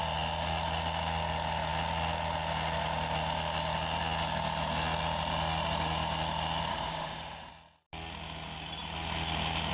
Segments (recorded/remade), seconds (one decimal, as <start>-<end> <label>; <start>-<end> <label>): 0.0-6.7 recorded; 6.7-7.5 remade; 7.5-9.7 recorded